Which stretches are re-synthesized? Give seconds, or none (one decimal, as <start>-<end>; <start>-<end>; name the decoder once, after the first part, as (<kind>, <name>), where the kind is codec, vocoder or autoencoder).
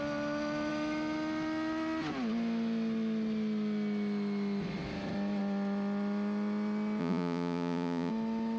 7.0-8.1 (vocoder, Vocos)